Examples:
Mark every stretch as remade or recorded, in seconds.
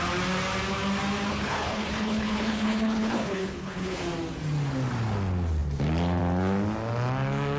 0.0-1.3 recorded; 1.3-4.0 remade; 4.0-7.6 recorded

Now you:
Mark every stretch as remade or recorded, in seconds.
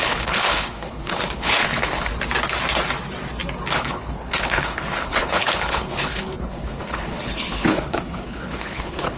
0.0-2.1 remade; 2.1-3.7 recorded; 3.7-9.2 remade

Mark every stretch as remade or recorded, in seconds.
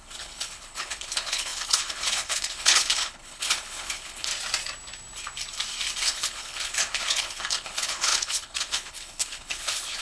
0.0-4.3 remade; 4.3-6.0 recorded; 6.0-10.0 remade